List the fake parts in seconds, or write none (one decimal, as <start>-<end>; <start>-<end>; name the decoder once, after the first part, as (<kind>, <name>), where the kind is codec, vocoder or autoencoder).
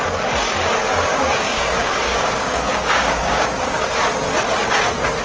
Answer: 1.1-3.8 (codec, DAC)